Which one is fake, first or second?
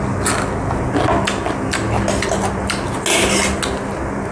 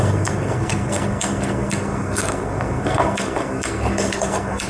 second